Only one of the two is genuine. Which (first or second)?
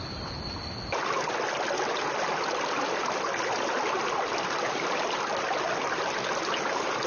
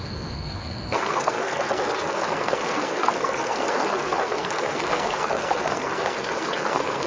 first